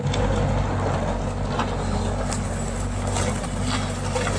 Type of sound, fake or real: real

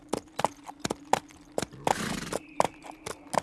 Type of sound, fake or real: real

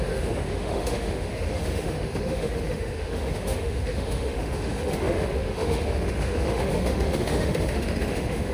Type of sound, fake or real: fake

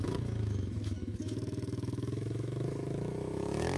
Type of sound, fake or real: fake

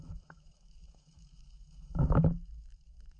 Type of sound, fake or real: fake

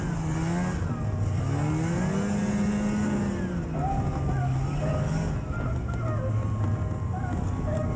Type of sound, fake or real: real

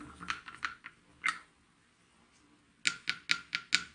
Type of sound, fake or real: real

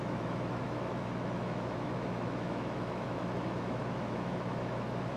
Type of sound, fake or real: fake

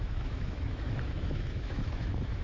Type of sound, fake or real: fake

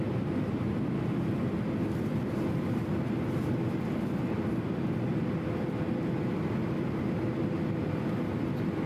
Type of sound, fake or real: real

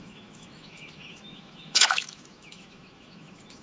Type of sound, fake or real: fake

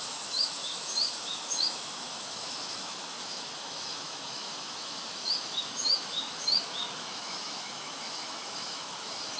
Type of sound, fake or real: fake